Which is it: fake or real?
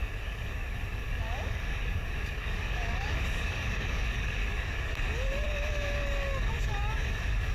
fake